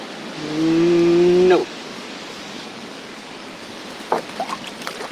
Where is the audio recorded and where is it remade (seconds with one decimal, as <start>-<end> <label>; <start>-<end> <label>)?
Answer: 0.0-1.6 recorded; 1.6-3.8 remade; 3.8-5.1 recorded